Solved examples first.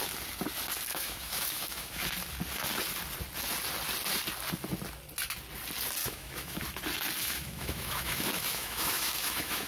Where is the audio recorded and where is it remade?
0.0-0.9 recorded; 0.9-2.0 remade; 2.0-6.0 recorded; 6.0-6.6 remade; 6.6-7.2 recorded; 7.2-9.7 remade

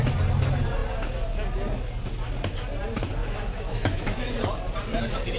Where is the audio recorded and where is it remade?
0.0-3.2 recorded; 3.2-4.3 remade; 4.3-5.4 recorded

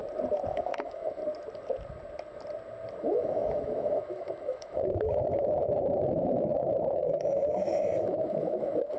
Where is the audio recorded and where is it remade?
0.0-0.5 recorded; 0.5-1.2 remade; 1.2-3.0 recorded; 3.0-9.0 remade

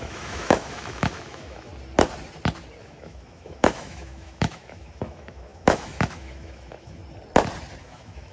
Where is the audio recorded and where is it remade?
0.0-1.7 remade; 1.7-2.8 recorded; 2.8-7.0 remade; 7.0-7.8 recorded; 7.8-8.3 remade

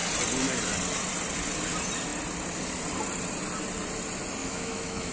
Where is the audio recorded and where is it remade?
0.0-4.4 recorded; 4.4-5.1 remade

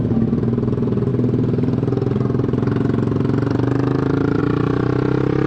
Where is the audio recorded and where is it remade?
0.0-5.5 recorded

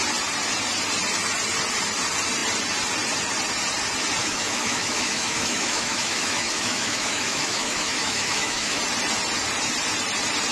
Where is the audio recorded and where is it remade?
0.0-4.2 recorded; 4.2-8.8 remade; 8.8-10.5 recorded